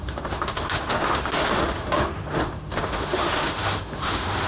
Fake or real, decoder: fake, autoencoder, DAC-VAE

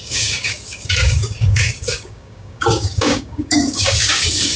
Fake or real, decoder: fake, codec, DAC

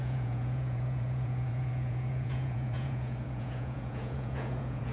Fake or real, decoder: fake, vocoder, Vocos